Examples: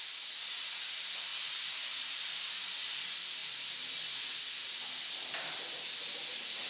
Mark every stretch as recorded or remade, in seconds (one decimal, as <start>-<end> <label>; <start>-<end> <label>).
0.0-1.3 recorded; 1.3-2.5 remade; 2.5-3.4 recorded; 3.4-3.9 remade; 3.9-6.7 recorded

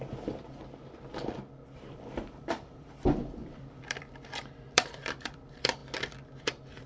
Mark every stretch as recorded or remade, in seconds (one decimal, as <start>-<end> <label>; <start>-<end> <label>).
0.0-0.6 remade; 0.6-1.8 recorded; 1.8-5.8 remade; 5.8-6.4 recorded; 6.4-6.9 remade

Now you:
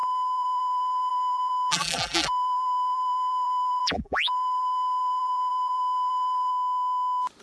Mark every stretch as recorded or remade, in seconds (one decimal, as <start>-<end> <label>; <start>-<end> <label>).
0.0-6.5 remade; 6.5-7.4 recorded

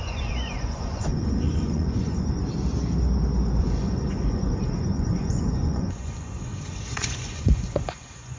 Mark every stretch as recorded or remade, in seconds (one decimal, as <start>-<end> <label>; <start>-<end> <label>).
0.0-2.4 remade; 2.4-3.6 recorded; 3.6-8.4 remade

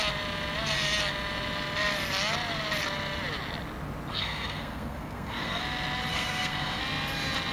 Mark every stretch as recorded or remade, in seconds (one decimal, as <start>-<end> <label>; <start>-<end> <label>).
0.0-4.1 recorded; 4.1-5.6 remade; 5.6-6.1 recorded; 6.1-6.8 remade; 6.8-7.5 recorded